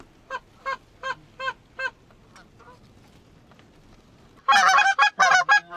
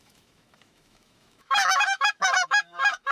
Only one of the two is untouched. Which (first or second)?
first